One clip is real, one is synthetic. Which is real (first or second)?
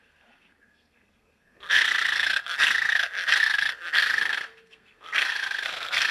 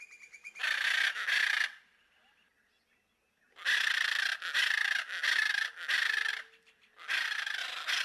second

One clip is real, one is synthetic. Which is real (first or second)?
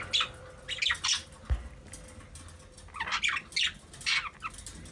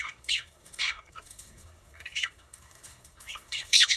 first